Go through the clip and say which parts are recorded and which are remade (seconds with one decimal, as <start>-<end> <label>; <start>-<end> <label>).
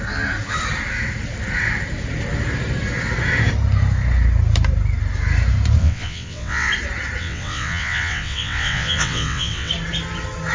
0.0-5.8 recorded; 5.8-6.7 remade; 6.7-7.2 recorded; 7.2-9.7 remade; 9.7-10.5 recorded